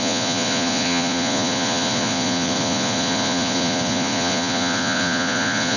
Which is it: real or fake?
fake